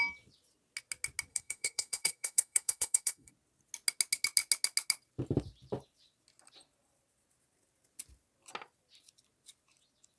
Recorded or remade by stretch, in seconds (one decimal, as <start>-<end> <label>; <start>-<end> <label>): 0.0-1.3 recorded; 1.3-3.3 remade; 3.3-10.2 recorded